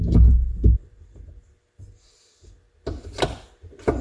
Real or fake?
real